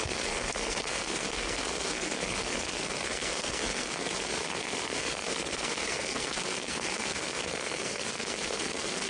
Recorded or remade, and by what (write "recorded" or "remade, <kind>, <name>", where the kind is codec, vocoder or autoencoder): remade, codec, SNAC